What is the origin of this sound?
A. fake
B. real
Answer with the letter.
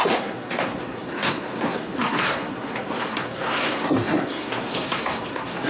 A